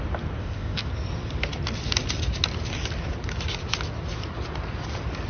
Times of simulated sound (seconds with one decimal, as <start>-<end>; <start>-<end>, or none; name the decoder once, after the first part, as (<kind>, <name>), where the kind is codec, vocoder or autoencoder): 0.4-0.9 (codec, ZipCodec)